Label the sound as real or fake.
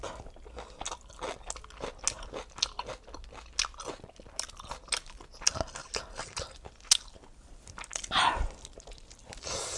real